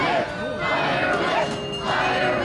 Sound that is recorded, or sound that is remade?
recorded